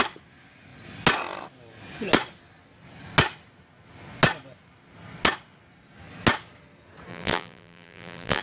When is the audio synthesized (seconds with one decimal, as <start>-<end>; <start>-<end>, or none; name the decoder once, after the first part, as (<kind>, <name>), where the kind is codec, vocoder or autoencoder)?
7.1-8.4 (vocoder, BigVGAN v2)